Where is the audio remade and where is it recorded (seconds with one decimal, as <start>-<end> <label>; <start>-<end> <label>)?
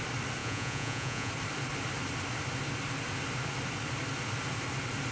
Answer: 0.0-0.4 recorded; 0.4-1.3 remade; 1.3-5.1 recorded